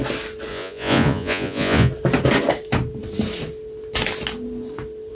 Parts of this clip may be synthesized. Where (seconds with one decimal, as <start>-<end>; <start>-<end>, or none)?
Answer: 0.5-1.9